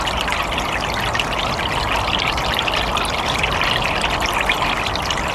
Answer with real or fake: real